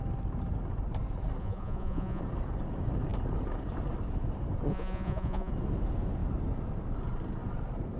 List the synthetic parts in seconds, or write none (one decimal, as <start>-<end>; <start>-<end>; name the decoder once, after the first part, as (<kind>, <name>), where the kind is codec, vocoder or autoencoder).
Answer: 1.4-2.2 (vocoder, Vocos); 4.7-5.5